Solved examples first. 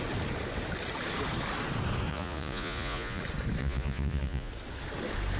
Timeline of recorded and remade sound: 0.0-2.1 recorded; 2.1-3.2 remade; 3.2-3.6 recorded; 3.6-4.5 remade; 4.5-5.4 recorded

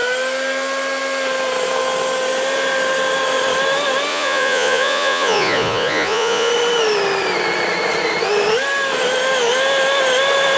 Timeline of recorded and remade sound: 0.0-4.1 recorded; 4.1-6.5 remade; 6.5-10.6 recorded

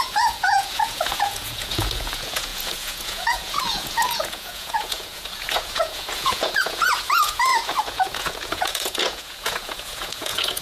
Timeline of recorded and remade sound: 0.0-10.6 remade

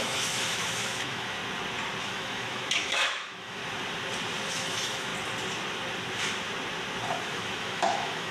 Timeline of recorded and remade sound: 0.0-1.4 remade; 1.4-2.0 recorded; 2.0-3.6 remade; 3.6-4.5 recorded; 4.5-5.1 remade; 5.1-7.2 recorded; 7.2-8.3 remade

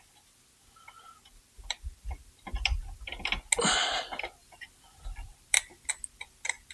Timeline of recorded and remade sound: 0.0-4.4 recorded; 4.4-5.9 remade; 5.9-6.7 recorded

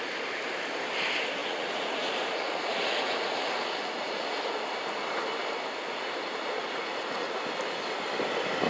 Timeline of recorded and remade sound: 0.0-1.4 recorded; 1.4-4.4 remade; 4.4-5.9 recorded; 5.9-7.4 remade; 7.4-8.7 recorded

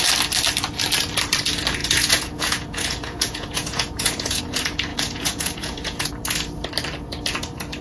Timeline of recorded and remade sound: 0.0-1.8 recorded; 1.8-4.4 remade; 4.4-4.9 recorded; 4.9-6.1 remade; 6.1-7.8 recorded